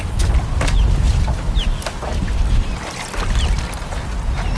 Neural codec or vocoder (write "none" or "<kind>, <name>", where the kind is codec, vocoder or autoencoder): none